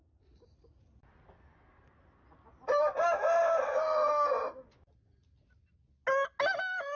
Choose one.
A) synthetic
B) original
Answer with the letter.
B